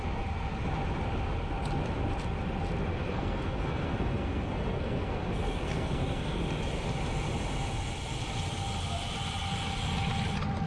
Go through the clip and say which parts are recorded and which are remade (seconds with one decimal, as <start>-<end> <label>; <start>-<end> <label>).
0.0-2.9 recorded; 2.9-6.4 remade; 6.4-10.7 recorded